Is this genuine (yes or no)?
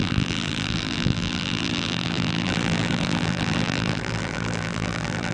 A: no